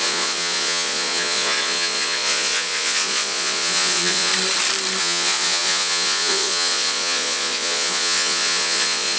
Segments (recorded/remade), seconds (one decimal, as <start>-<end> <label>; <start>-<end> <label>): 0.0-4.3 remade; 4.3-5.0 recorded; 5.0-9.2 remade